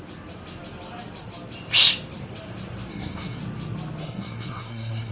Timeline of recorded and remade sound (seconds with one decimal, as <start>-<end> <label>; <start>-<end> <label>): 0.0-2.9 recorded; 2.9-3.4 remade; 3.4-4.0 recorded; 4.0-5.1 remade